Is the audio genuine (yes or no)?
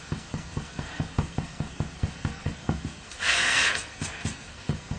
no